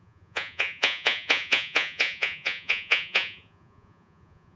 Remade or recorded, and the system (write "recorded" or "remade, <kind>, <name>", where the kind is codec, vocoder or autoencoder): remade, vocoder, Vocos